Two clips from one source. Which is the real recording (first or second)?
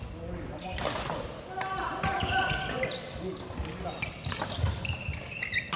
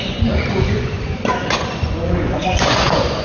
first